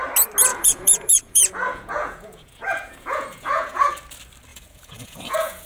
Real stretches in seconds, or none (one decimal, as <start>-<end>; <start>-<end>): 0.0-0.5; 3.9-4.5